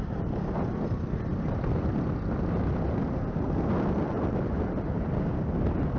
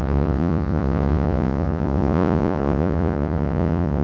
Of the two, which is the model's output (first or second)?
second